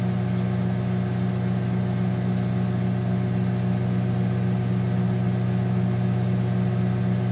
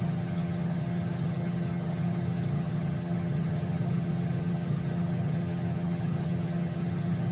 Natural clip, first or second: first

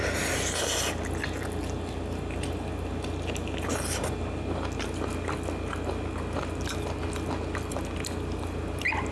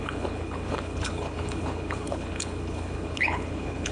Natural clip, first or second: first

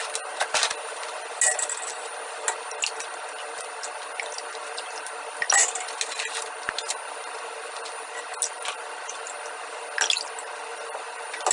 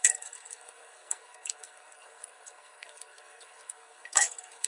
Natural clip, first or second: first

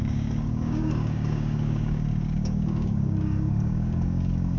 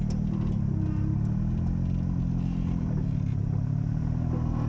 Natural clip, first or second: second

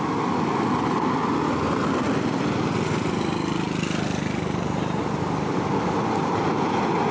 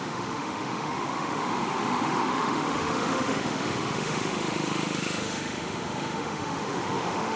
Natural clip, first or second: first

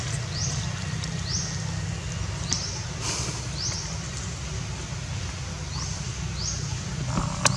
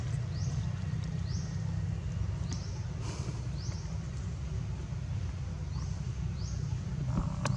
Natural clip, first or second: first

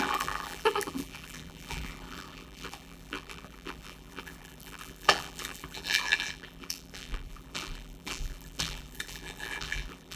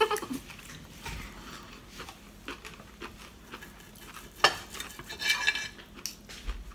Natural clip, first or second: second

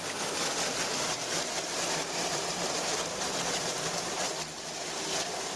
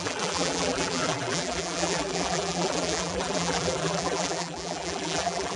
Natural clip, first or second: first